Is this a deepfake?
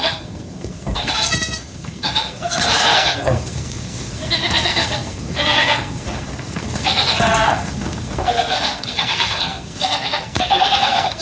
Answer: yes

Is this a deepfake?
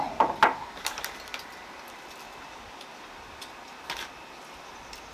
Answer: no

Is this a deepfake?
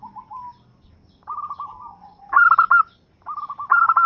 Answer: no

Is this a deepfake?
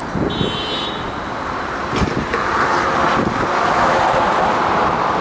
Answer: no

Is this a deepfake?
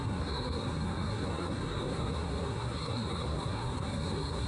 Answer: yes